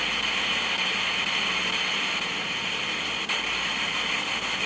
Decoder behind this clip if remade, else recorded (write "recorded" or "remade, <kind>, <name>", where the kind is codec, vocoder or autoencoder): recorded